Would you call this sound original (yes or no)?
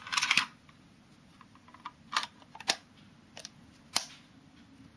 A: yes